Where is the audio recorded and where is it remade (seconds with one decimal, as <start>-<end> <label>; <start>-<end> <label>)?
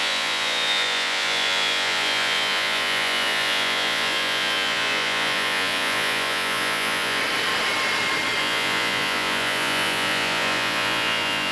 0.0-7.2 remade; 7.2-8.4 recorded; 8.4-11.5 remade